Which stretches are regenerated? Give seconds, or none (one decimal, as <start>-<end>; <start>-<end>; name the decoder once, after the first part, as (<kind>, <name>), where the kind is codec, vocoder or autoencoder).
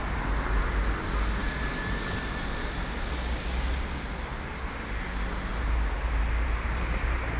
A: 0.0-0.7 (vocoder, BigVGAN v2); 1.4-3.7; 5.5-7.4